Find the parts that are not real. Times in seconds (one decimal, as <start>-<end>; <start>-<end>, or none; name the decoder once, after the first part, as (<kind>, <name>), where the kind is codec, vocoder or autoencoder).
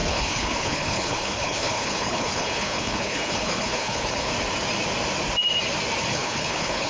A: 0.0-4.3 (codec, HILCodec); 6.1-6.9